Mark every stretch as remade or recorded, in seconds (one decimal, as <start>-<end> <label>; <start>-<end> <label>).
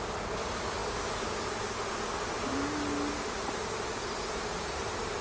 0.0-5.2 recorded